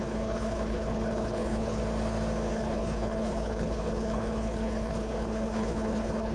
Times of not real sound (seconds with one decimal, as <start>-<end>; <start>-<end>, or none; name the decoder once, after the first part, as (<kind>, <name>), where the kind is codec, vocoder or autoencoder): 0.0-1.8 (codec, HILCodec); 2.5-6.3